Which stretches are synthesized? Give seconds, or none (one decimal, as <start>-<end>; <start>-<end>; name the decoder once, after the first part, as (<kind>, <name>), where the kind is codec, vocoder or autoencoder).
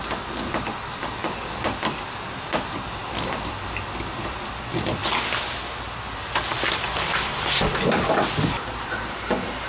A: 0.5-5.0 (vocoder, BigVGAN v2); 5.8-9.7